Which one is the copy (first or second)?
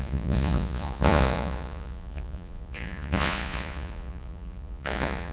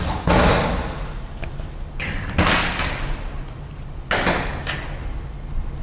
first